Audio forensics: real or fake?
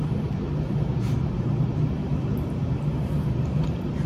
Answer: fake